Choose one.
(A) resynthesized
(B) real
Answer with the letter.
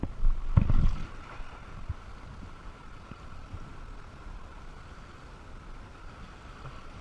B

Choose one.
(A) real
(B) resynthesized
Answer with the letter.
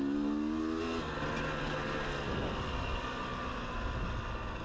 A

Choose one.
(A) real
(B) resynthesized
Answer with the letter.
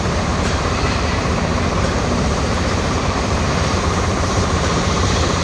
B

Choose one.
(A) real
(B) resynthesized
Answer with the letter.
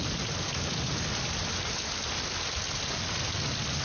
A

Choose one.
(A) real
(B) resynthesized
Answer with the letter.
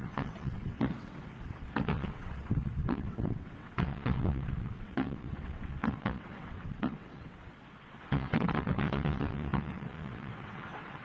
B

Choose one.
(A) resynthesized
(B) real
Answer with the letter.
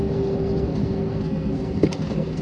A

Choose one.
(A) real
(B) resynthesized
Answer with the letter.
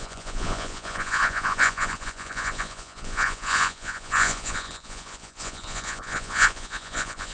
B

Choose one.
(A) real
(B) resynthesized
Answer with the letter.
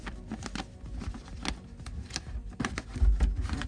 A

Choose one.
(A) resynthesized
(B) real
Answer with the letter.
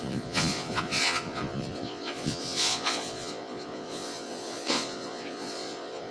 A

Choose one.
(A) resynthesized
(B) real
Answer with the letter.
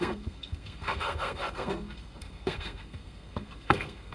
A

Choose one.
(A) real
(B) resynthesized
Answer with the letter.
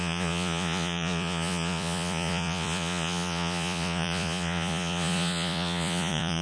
B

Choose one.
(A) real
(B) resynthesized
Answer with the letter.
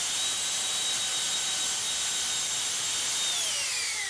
A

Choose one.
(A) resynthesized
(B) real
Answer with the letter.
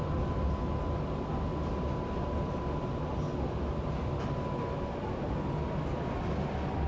B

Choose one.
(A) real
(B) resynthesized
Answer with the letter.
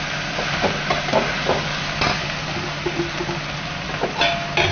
A